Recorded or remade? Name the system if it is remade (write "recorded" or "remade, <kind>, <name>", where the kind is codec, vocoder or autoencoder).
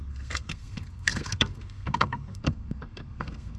remade, codec, SNAC